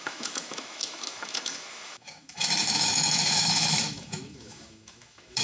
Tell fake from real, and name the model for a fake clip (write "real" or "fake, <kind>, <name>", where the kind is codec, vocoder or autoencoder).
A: fake, autoencoder, DAC-VAE